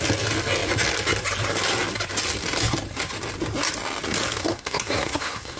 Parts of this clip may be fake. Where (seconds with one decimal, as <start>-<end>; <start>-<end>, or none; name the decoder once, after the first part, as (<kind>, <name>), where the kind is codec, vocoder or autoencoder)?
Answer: 4.4-5.6 (codec, SNAC)